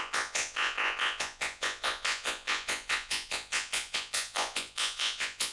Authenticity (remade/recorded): remade